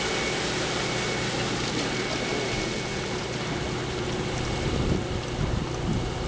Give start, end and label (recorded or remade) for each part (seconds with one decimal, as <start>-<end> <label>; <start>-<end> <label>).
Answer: 0.0-6.3 recorded